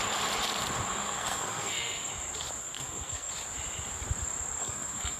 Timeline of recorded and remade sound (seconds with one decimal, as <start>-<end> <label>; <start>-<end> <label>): 0.0-1.0 recorded; 1.0-2.1 remade; 2.1-2.6 recorded; 2.6-3.3 remade; 3.3-4.6 recorded; 4.6-5.2 remade